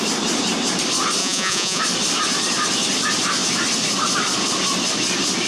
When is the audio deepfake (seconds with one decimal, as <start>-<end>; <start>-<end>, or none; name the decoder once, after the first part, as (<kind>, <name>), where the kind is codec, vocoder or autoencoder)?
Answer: 1.2-1.8 (vocoder, Vocos)